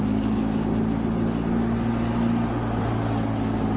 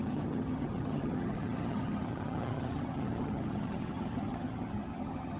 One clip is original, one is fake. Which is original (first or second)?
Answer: first